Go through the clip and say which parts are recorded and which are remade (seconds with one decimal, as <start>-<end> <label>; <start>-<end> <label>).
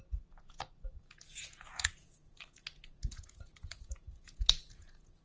0.0-5.2 remade